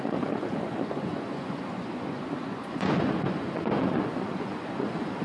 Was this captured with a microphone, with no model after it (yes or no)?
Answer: no